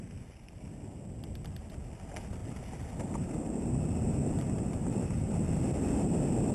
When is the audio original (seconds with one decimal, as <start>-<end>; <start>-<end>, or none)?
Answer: 0.0-6.5